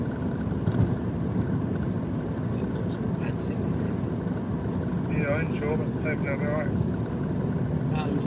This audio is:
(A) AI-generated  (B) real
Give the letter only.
B